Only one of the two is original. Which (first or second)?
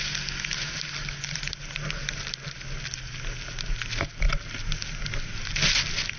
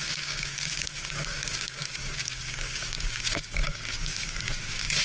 first